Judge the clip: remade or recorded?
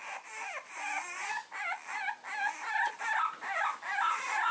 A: recorded